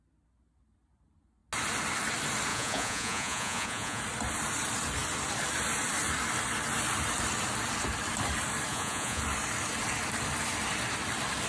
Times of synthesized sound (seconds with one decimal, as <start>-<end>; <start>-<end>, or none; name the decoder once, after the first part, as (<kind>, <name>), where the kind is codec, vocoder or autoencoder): 2.5-4.0 (vocoder, Vocos); 8.7-9.2